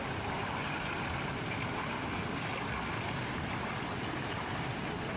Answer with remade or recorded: recorded